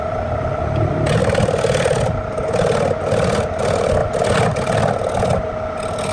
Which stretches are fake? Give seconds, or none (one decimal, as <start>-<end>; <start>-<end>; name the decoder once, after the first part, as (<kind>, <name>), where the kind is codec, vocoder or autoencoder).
0.0-1.2 (vocoder, BigVGAN v2); 3.6-4.0